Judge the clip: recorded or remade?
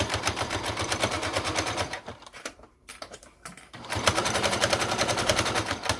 remade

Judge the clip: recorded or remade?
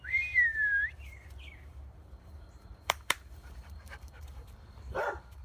remade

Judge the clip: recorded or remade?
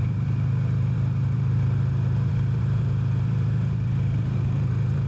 remade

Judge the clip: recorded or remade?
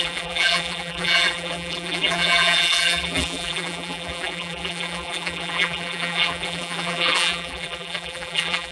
remade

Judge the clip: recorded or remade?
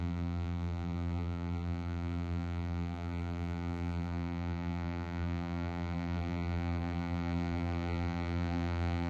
remade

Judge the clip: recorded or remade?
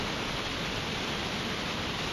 recorded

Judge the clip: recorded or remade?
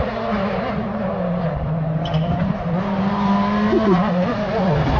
remade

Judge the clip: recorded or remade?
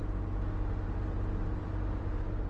remade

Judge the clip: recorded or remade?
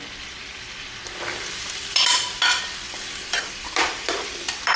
remade